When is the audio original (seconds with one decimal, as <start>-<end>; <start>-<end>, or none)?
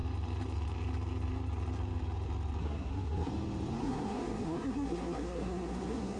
0.0-2.6; 3.3-3.8